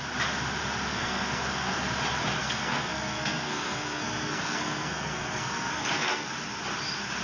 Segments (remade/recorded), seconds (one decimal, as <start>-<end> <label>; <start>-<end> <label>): 0.0-0.9 recorded; 0.9-1.9 remade; 1.9-2.4 recorded; 2.4-6.3 remade; 6.3-7.2 recorded